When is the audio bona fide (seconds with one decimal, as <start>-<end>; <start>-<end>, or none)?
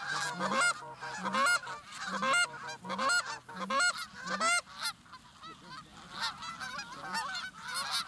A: 0.0-8.1